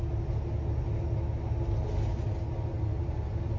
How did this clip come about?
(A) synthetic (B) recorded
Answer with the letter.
B